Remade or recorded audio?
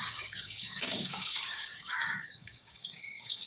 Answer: remade